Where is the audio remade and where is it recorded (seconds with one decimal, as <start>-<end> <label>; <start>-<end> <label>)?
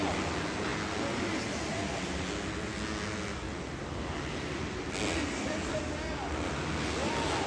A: 0.0-7.5 recorded